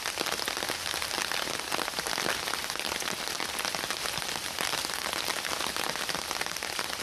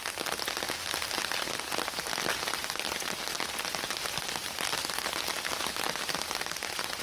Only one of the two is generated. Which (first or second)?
first